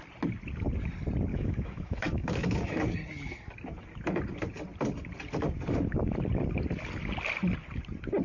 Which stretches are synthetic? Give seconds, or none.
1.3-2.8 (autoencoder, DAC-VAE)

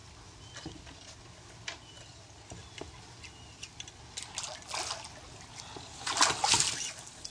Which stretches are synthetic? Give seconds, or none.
none

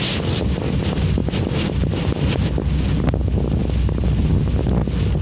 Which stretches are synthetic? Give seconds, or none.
1.2-2.5 (vocoder, BigVGAN v2)

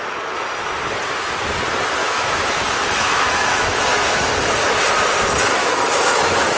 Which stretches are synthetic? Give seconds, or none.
2.0-4.3 (autoencoder, DAC-VAE); 5.6-6.6

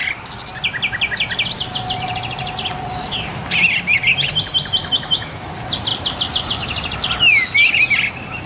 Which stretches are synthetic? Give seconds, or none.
4.8-5.5 (autoencoder, DAC-VAE)

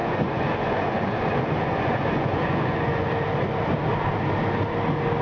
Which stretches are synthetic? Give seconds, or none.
0.0-3.1 (vocoder, Vocos)